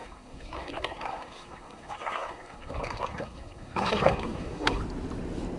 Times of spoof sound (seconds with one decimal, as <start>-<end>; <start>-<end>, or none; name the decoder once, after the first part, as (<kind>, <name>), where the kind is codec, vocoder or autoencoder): 0.0-4.8 (codec, SNAC)